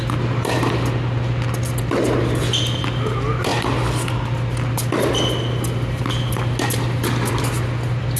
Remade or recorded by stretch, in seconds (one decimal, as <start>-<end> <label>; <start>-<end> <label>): 0.0-8.2 recorded